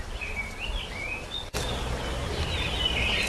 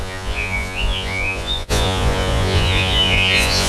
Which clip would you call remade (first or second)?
second